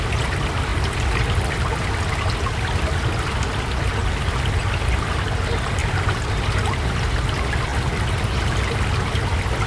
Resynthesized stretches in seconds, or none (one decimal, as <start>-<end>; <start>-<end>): none